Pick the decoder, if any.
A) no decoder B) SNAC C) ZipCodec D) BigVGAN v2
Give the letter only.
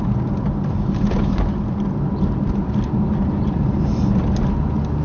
A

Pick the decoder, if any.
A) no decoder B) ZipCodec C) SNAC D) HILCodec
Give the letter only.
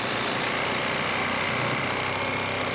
A